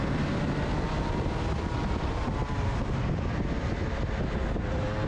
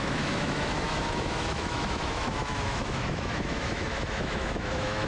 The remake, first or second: second